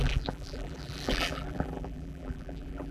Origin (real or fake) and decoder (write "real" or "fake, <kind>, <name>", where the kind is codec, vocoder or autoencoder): fake, vocoder, BigVGAN v2